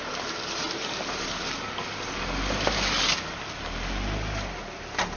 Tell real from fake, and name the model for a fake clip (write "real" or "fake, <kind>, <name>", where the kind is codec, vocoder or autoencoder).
real